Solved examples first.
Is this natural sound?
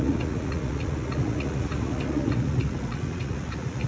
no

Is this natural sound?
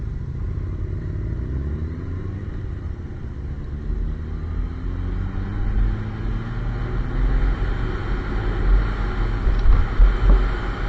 yes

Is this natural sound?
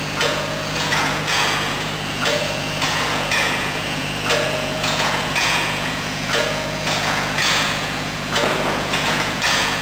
no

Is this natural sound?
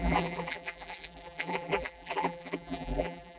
no